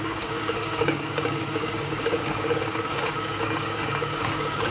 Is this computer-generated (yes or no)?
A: yes